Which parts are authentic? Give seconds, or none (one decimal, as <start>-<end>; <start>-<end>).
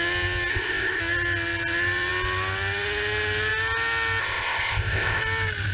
0.0-0.5; 1.0-4.2; 5.2-5.7